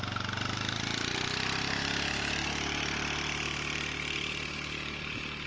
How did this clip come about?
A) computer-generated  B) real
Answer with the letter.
B